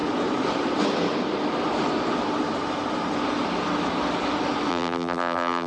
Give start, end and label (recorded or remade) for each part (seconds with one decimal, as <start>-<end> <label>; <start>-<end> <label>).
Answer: 0.0-4.7 recorded; 4.7-5.7 remade